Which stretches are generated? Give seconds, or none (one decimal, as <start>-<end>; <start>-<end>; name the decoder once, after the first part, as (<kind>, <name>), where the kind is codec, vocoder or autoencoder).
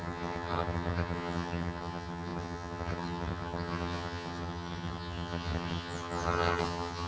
0.0-7.1 (vocoder, HiFi-GAN)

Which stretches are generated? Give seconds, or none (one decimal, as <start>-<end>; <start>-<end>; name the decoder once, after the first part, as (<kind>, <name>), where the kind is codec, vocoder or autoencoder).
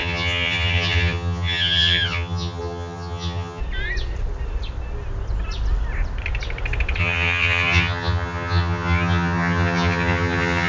0.0-3.6 (vocoder, HiFi-GAN); 7.0-10.7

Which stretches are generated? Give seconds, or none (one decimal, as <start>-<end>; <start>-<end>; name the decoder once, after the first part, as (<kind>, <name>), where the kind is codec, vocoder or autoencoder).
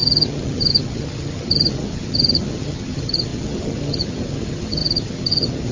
0.0-5.7 (vocoder, HiFi-GAN)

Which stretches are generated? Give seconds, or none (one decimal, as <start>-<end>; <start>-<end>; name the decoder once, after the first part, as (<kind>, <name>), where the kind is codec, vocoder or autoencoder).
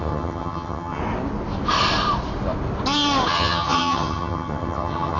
0.0-1.0 (vocoder, HiFi-GAN); 3.3-5.2